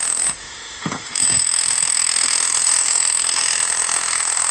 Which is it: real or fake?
fake